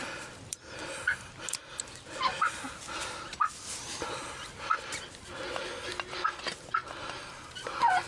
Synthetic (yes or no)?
no